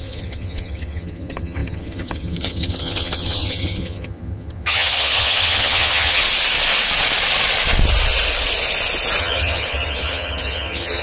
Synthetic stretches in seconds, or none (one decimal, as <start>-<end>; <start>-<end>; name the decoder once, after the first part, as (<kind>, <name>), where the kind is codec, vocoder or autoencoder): 0.0-6.2 (vocoder, HiFi-GAN); 9.2-11.0